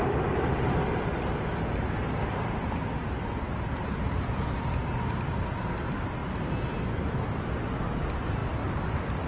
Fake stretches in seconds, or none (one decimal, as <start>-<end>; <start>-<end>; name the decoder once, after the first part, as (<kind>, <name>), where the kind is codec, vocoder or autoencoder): none